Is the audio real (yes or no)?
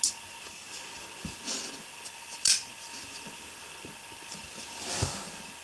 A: yes